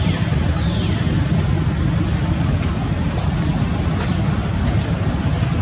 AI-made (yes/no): no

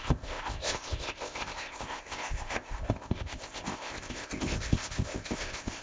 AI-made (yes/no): yes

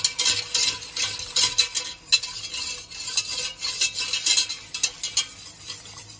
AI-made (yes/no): no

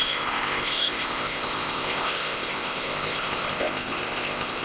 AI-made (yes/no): yes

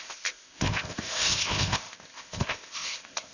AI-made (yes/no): yes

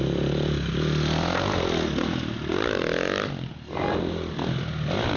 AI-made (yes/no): no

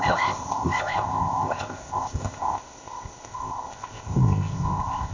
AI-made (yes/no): yes